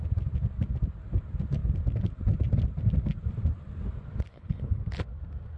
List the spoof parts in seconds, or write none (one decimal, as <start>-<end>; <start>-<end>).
4.3-4.8